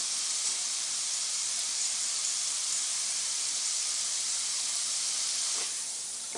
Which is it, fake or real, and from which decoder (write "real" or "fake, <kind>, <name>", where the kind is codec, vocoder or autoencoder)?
fake, vocoder, BigVGAN v2